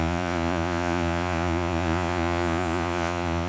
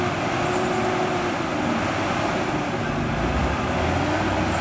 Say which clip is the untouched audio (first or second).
second